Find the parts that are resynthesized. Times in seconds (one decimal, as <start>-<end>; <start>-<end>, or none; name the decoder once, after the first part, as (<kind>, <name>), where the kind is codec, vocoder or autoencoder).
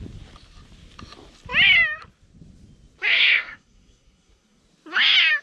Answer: 3.1-4.6 (codec, SNAC)